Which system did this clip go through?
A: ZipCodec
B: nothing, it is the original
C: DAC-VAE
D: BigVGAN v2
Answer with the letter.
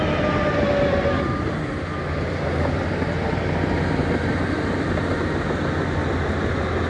B